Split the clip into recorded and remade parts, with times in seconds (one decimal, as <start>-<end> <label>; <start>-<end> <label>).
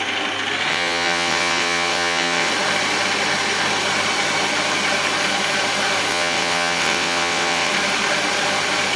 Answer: 0.0-0.7 recorded; 0.7-2.5 remade; 2.5-6.1 recorded; 6.1-7.7 remade; 7.7-9.0 recorded